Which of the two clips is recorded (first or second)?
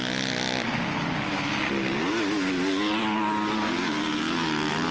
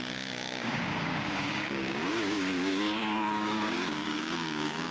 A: first